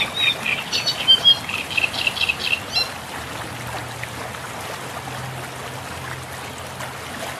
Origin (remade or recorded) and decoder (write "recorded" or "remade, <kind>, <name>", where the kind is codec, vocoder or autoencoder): recorded